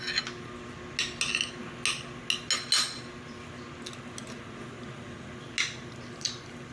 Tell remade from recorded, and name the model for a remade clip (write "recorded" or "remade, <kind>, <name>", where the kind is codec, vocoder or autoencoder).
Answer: recorded